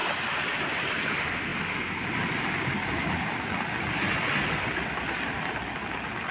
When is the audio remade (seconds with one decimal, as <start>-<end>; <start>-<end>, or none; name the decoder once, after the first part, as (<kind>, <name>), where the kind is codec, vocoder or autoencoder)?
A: 0.0-1.1 (vocoder, BigVGAN v2)